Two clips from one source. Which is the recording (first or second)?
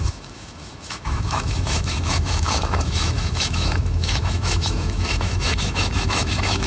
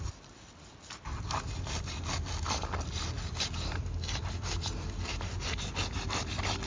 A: second